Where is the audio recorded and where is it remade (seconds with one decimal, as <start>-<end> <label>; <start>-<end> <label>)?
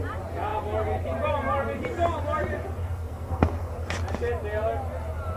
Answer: 0.0-2.8 recorded; 2.8-3.7 remade; 3.7-5.4 recorded